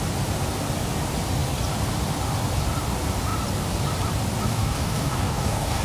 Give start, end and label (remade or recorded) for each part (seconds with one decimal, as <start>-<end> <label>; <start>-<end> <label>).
0.0-4.5 recorded; 4.5-5.8 remade